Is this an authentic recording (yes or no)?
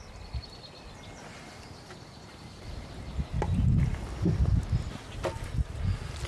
yes